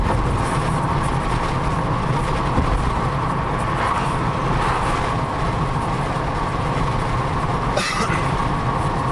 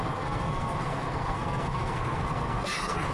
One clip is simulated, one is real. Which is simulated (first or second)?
second